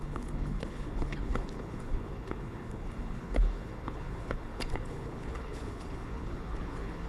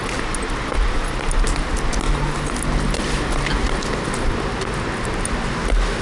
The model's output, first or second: first